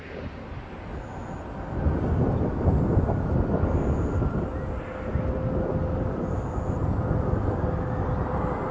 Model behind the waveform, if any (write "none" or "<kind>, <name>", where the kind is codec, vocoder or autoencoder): none